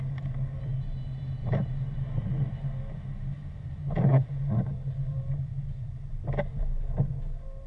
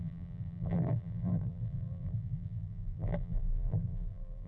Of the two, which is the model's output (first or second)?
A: second